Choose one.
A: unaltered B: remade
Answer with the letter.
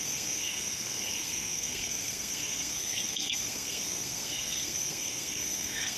B